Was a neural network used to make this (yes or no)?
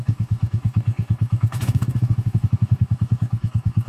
yes